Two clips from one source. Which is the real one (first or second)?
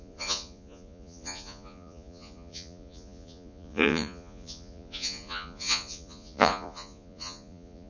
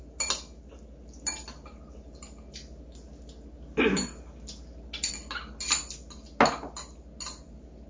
second